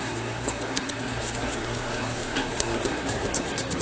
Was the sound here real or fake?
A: fake